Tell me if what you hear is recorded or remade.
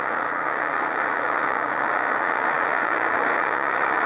remade